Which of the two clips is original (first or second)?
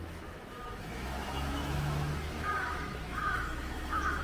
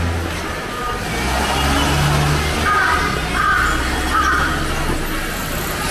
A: second